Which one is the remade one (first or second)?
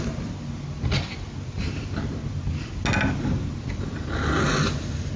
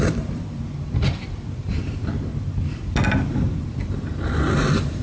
second